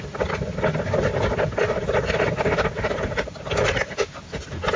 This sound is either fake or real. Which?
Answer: real